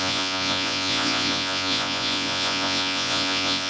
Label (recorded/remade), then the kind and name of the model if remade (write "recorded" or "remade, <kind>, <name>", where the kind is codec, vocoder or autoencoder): remade, vocoder, Vocos